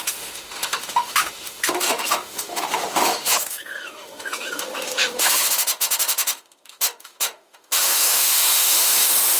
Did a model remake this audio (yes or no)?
yes